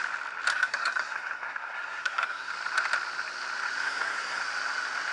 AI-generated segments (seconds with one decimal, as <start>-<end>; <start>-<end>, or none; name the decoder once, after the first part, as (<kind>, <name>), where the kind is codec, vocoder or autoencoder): 0.5-2.5 (codec, SNAC); 3.8-4.4